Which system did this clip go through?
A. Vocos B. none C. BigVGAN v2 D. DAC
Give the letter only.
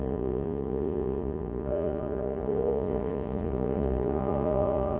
A